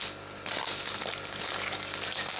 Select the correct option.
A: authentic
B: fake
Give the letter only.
A